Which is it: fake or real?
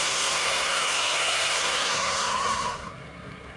fake